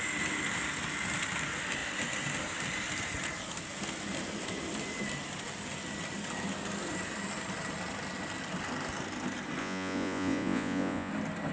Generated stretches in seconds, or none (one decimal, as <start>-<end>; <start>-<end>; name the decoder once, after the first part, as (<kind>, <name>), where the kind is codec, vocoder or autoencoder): 9.6-11.1 (vocoder, Vocos)